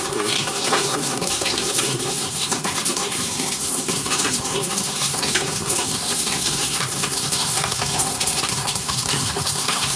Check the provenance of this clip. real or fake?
fake